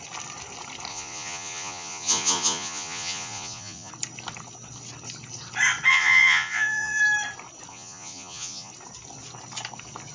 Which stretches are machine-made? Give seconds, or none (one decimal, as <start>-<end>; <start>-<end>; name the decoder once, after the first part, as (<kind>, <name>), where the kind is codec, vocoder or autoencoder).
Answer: 0.9-3.9 (vocoder, Vocos); 5.9-7.0; 7.7-8.7

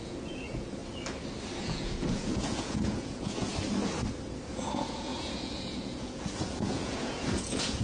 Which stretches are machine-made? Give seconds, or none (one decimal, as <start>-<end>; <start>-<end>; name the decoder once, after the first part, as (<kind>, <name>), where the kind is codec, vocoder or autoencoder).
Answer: 0.0-0.8 (vocoder, Vocos); 1.6-3.5; 4.5-7.8